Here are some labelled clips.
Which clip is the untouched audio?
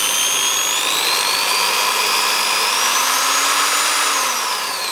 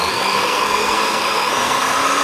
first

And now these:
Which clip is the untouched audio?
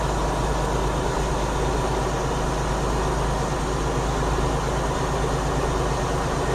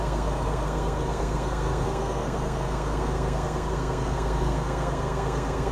first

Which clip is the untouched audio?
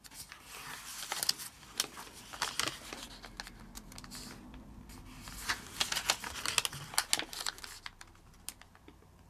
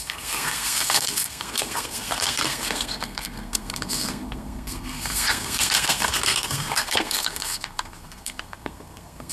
first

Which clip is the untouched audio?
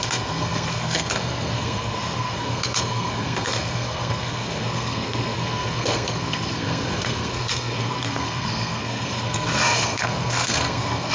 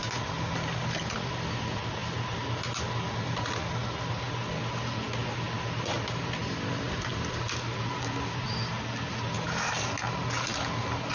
second